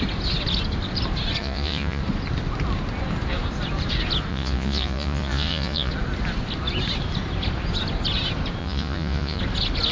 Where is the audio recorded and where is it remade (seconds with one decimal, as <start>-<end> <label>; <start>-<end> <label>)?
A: 0.0-1.4 recorded; 1.4-2.0 remade; 2.0-4.3 recorded; 4.3-5.9 remade; 5.9-8.6 recorded; 8.6-9.4 remade; 9.4-9.9 recorded